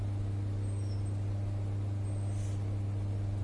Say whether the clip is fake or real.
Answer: real